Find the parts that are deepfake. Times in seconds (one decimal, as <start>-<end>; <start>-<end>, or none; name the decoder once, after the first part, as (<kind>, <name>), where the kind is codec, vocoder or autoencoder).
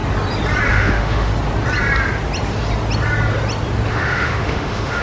0.7-1.3 (autoencoder, DAC-VAE); 3.9-5.0